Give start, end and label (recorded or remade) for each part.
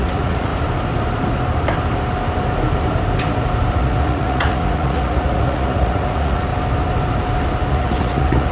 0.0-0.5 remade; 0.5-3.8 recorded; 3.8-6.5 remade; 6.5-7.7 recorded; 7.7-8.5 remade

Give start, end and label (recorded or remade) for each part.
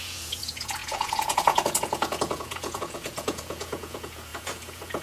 0.0-5.0 remade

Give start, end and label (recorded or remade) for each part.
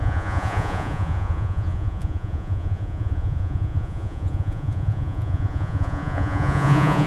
0.0-7.1 remade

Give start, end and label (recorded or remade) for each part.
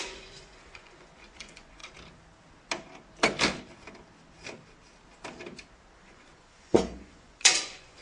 0.0-1.8 remade; 1.8-6.0 recorded; 6.0-8.0 remade